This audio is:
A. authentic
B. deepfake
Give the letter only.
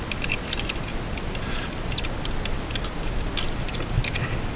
A